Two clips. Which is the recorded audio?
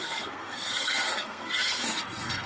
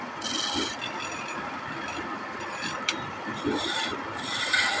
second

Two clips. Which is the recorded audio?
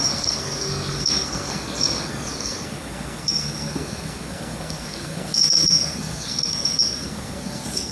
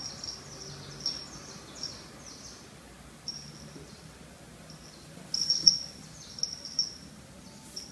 second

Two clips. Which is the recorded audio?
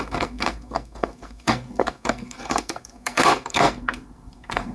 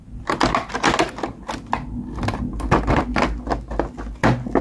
second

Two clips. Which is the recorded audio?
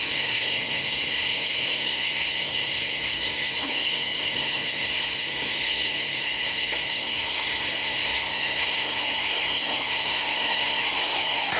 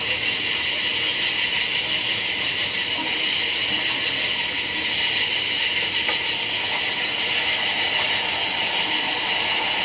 second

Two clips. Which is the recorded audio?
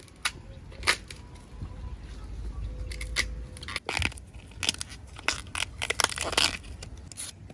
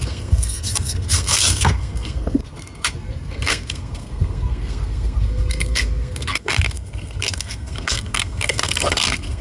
first